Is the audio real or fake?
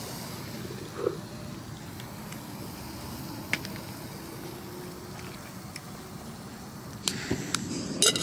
real